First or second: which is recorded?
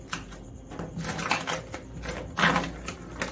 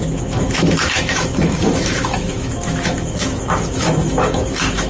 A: first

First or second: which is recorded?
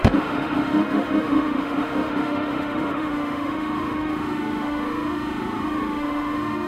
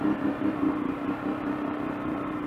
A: second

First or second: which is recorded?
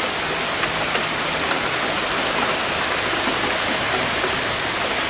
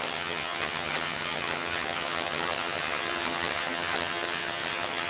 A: first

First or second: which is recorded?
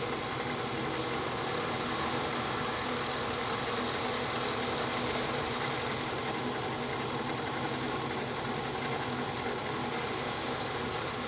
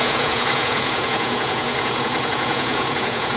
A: first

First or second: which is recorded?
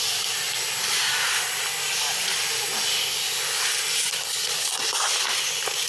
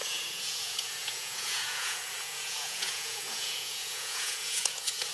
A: first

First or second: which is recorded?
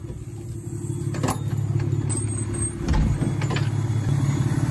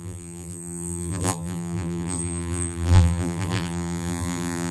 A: first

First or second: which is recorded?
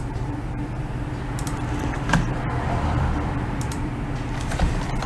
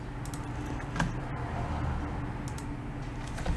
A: second